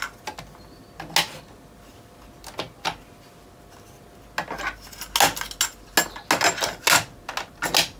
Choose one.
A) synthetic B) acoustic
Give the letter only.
B